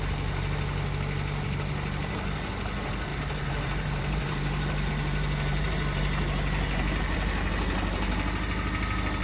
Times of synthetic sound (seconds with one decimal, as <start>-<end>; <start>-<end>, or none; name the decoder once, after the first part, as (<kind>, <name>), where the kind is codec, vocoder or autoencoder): 3.1-4.9 (vocoder, BigVGAN v2)